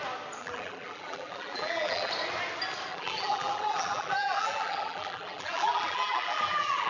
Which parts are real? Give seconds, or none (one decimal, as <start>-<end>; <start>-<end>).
0.0-0.4; 2.1-2.9